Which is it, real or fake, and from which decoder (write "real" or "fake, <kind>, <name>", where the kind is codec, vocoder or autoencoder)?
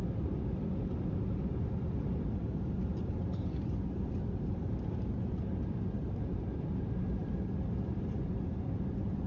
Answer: fake, vocoder, BigVGAN v2